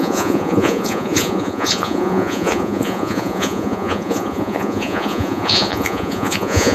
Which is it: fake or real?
fake